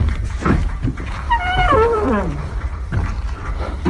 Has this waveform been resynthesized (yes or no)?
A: yes